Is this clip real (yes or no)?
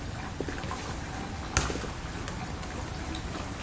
yes